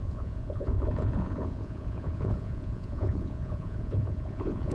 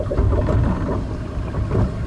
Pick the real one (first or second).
second